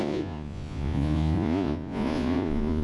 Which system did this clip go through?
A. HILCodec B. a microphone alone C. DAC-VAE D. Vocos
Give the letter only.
D